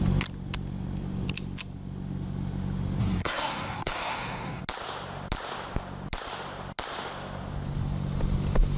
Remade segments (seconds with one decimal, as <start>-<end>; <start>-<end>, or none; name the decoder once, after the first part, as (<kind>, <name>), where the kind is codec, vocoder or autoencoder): 3.0-4.6 (codec, SNAC)